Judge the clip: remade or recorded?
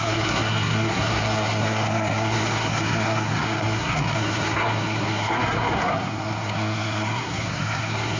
remade